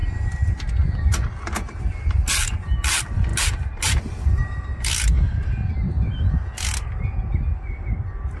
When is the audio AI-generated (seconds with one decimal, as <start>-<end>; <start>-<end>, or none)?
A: none